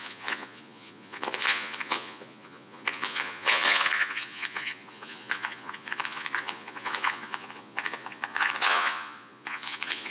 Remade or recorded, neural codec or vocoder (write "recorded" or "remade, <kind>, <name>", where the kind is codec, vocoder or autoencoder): remade, vocoder, Vocos